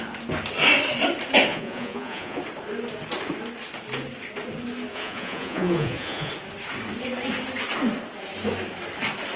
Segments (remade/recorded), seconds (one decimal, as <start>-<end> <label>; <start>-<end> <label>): 0.0-1.5 recorded; 1.5-2.4 remade; 2.4-4.9 recorded; 4.9-6.3 remade; 6.3-9.4 recorded